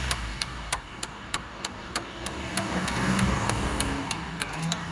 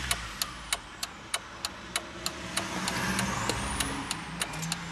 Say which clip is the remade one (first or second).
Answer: first